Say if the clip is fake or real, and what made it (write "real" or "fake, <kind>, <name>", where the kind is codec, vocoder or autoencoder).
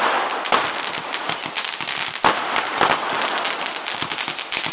real